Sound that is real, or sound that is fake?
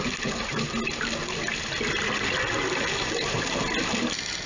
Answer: real